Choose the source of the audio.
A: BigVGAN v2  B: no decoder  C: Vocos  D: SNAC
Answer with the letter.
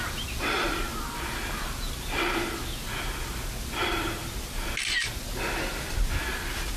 B